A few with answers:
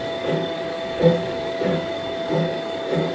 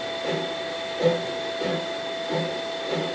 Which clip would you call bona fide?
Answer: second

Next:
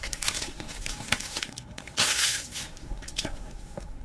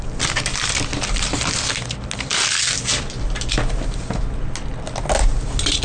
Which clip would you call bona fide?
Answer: second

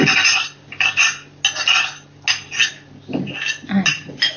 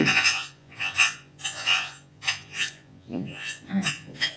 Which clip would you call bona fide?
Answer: first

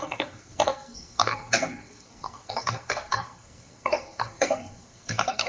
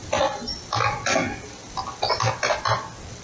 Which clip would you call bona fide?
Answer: second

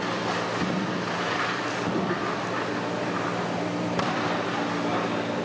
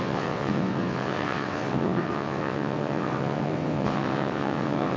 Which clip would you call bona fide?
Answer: first